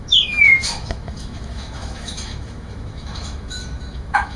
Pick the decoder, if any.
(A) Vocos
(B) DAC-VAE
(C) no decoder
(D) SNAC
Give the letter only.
B